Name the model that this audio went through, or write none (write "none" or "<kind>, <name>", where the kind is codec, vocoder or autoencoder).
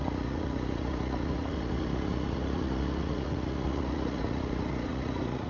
vocoder, Vocos